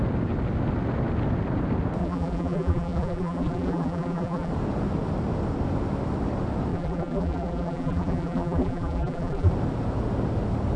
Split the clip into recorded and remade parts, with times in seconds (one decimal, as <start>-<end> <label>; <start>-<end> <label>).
0.0-2.0 recorded; 2.0-4.5 remade; 4.5-6.7 recorded; 6.7-9.5 remade; 9.5-10.8 recorded